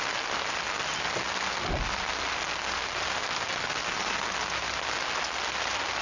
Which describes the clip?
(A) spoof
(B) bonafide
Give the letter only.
B